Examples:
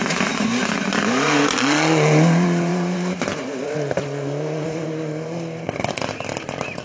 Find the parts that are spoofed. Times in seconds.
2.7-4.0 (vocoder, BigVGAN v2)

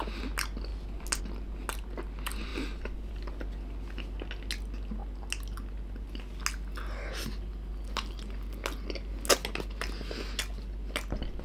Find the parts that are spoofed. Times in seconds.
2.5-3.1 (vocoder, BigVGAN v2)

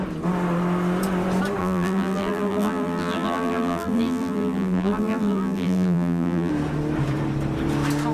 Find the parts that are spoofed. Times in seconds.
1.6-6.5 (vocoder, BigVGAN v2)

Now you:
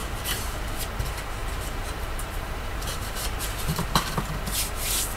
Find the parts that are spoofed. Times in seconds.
0.0-0.8 (vocoder, BigVGAN v2); 1.4-4.1

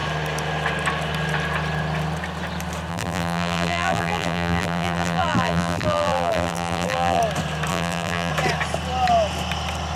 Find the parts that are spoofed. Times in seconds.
2.9-7.2 (vocoder, BigVGAN v2); 7.7-8.3

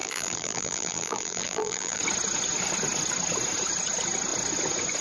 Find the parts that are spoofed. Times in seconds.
0.0-2.0 (vocoder, BigVGAN v2)

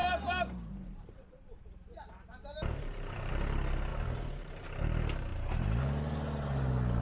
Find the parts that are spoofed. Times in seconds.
0.0-3.3 (vocoder, BigVGAN v2); 3.9-4.5; 5.3-5.8

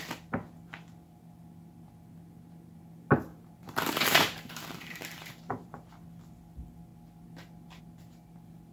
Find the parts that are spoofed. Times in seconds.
3.3-5.9 (vocoder, BigVGAN v2)